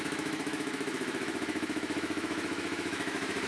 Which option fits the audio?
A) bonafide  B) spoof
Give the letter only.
B